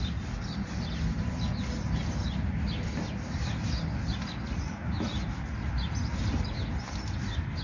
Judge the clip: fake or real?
real